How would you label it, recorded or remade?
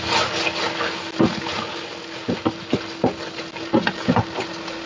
recorded